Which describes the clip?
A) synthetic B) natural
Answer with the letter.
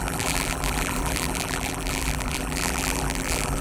A